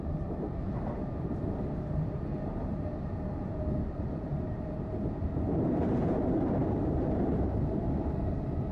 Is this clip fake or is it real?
fake